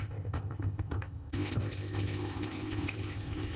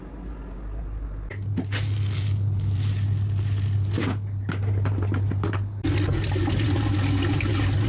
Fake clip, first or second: first